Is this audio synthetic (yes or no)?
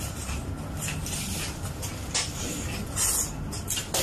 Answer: no